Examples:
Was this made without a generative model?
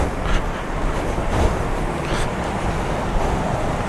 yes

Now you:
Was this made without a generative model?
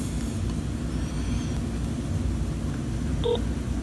yes